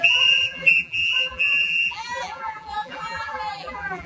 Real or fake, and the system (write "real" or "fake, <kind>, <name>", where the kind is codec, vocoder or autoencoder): fake, vocoder, BigVGAN v2